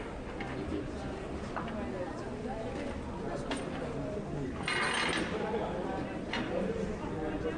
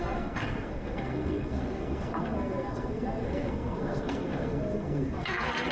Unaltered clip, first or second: first